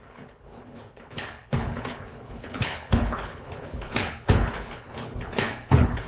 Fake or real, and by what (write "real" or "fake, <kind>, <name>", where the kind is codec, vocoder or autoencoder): fake, codec, HILCodec